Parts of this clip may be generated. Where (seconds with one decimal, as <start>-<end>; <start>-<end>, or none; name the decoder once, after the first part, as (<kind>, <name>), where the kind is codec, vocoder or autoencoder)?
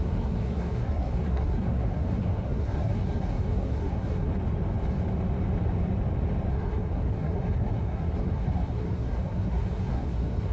0.0-4.3 (codec, SNAC); 6.5-10.5